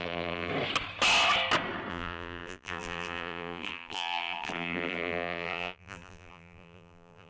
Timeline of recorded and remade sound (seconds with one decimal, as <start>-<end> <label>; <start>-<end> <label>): 0.0-0.5 remade; 0.5-1.9 recorded; 1.9-7.3 remade